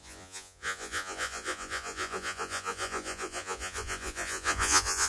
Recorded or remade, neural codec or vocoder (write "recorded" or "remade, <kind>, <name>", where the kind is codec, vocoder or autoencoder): remade, vocoder, Vocos